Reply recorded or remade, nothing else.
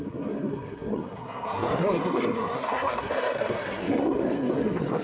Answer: remade